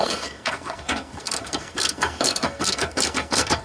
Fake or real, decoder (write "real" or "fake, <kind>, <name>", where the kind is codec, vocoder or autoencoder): fake, codec, SNAC